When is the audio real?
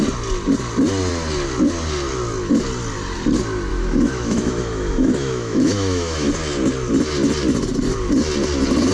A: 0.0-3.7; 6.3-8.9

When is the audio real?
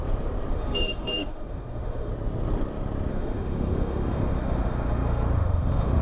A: 0.0-0.5; 2.1-3.1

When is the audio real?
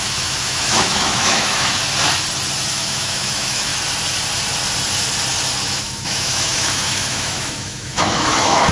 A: 1.8-2.7; 3.7-5.6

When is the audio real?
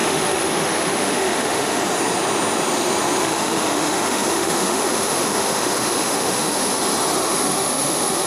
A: 1.8-3.2; 6.8-7.2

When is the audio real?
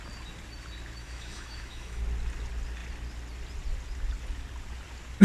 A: 0.0-1.0; 2.0-5.2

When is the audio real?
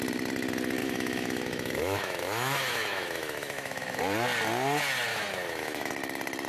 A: 0.0-0.8; 4.0-5.1; 5.9-6.5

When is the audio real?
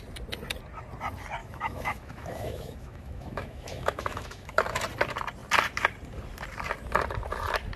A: 0.0-1.4; 4.8-7.8